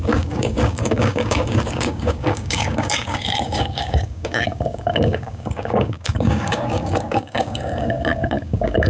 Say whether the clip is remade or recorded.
remade